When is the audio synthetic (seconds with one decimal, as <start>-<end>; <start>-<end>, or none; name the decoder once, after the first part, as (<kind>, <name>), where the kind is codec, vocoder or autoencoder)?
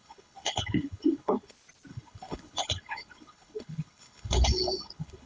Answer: 0.0-1.5 (codec, HILCodec); 1.9-5.3